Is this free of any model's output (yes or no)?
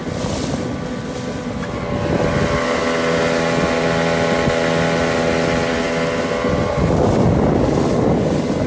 yes